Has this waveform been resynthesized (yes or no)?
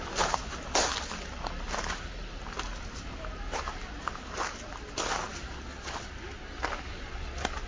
no